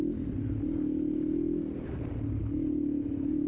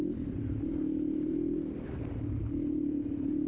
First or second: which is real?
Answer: first